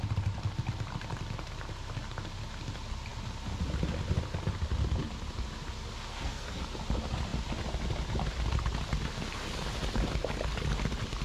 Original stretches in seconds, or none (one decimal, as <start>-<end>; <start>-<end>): 0.0-6.1; 6.6-11.2